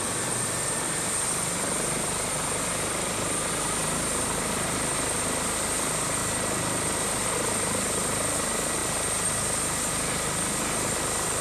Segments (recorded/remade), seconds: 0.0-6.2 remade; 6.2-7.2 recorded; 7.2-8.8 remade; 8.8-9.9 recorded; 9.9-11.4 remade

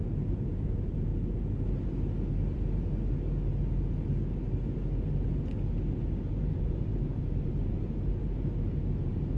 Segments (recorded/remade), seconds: 0.0-1.1 remade; 1.1-6.3 recorded; 6.3-9.4 remade

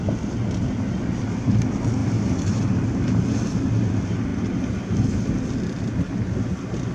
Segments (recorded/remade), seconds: 0.0-2.0 recorded; 2.0-3.2 remade; 3.2-6.9 recorded

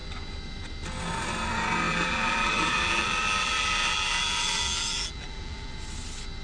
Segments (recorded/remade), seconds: 0.0-1.9 recorded; 1.9-5.7 remade; 5.7-6.4 recorded